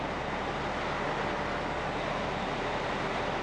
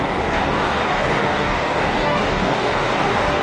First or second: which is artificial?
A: second